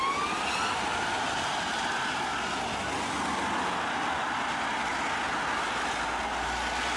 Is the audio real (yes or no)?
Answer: yes